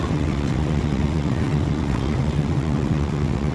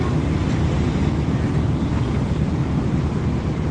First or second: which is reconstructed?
first